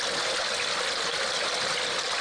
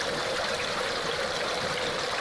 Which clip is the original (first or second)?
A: first